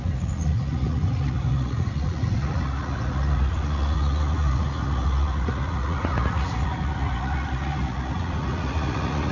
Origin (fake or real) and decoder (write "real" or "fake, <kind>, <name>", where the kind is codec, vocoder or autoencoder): fake, vocoder, Vocos